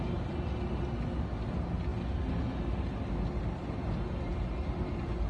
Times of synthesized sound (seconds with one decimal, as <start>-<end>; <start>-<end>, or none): none